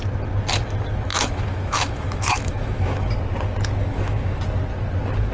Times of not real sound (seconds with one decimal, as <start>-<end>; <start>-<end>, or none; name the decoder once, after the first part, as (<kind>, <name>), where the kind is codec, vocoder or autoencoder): 1.1-3.1 (autoencoder, DAC-VAE); 3.8-4.4